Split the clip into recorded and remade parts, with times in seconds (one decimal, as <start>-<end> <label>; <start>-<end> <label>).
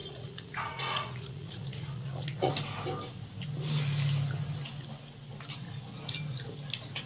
0.0-2.5 remade; 2.5-7.1 recorded